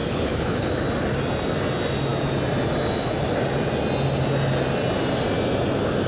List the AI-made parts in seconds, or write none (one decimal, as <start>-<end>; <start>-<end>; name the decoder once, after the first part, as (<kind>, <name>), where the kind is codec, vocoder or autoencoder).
0.0-0.7 (codec, HILCodec)